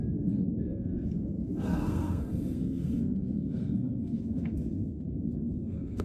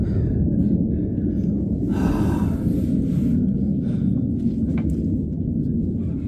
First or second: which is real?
second